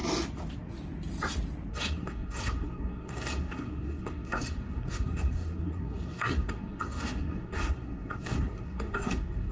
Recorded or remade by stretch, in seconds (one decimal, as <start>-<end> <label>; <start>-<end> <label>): 0.0-1.7 recorded; 1.7-9.5 remade